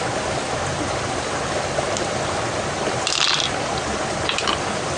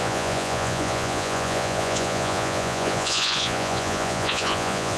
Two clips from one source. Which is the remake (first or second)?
second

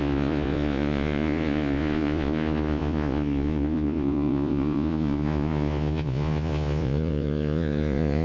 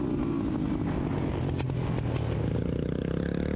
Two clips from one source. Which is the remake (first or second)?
first